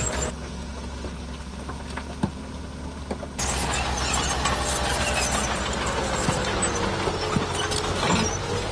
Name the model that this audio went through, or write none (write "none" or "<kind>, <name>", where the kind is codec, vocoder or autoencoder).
none